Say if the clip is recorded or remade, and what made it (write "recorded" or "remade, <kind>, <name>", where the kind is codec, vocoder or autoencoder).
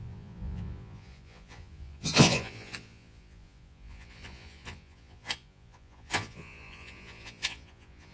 remade, vocoder, Vocos